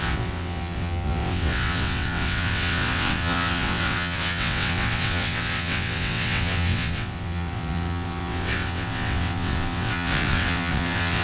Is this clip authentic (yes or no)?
no